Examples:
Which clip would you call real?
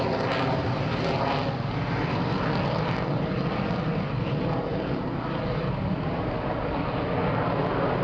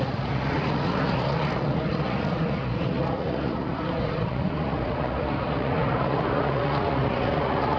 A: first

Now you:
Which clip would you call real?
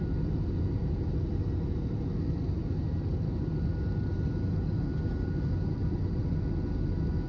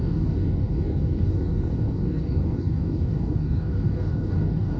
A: first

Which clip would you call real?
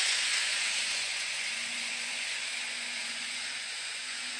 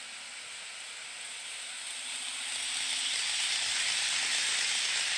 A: second